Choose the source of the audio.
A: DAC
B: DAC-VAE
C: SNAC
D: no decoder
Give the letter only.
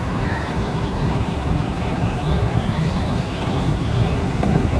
C